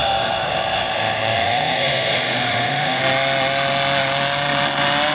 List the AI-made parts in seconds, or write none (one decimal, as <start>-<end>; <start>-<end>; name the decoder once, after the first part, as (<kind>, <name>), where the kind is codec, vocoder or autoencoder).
0.0-3.0 (autoencoder, DAC-VAE)